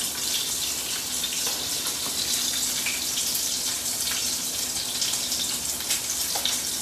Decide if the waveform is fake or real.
real